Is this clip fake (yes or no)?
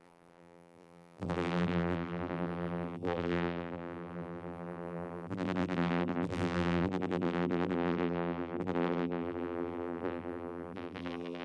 yes